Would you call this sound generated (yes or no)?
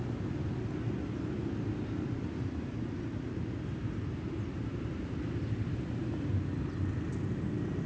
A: no